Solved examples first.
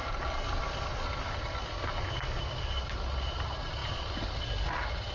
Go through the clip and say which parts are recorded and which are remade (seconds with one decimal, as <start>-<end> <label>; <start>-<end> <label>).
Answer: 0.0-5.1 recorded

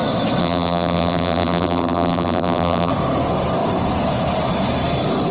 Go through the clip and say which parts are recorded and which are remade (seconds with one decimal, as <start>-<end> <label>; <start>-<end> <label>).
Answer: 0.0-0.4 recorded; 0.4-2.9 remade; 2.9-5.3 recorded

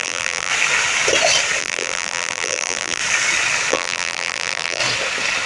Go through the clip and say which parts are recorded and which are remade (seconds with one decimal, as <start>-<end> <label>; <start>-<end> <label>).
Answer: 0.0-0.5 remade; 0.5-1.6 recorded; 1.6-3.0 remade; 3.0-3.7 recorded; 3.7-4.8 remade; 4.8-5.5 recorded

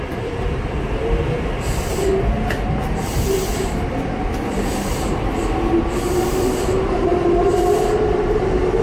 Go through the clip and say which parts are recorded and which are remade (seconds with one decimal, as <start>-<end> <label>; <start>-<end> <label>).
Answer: 0.0-2.1 remade; 2.1-2.7 recorded; 2.7-8.8 remade

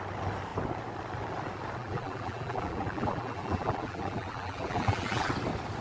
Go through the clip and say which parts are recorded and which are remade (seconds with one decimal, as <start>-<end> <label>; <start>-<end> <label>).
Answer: 0.0-1.8 recorded; 1.8-5.3 remade; 5.3-5.8 recorded

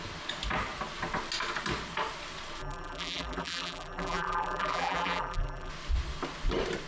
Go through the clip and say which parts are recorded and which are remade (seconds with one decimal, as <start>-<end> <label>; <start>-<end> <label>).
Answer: 0.0-2.6 recorded; 2.6-5.7 remade; 5.7-6.9 recorded

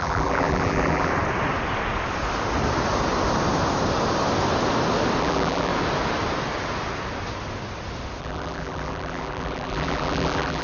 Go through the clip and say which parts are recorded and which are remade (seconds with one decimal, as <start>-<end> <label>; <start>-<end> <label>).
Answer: 0.0-1.1 remade; 1.1-5.2 recorded; 5.2-5.7 remade; 5.7-8.2 recorded; 8.2-10.6 remade